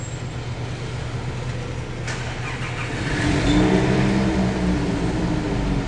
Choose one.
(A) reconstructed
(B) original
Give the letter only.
B